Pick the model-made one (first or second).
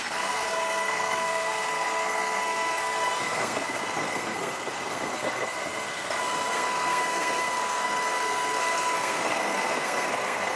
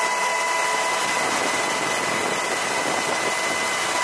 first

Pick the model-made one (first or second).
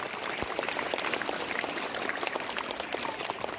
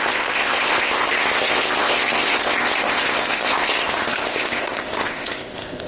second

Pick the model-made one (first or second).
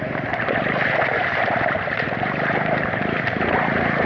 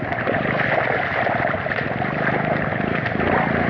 first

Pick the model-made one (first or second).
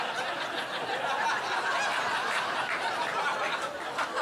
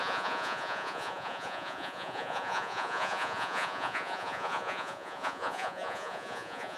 second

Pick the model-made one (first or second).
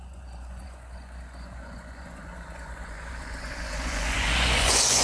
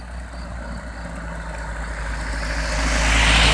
first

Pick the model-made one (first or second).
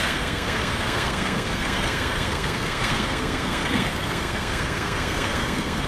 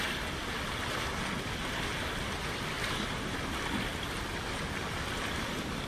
first